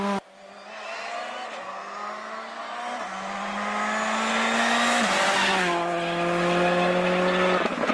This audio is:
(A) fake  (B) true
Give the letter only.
B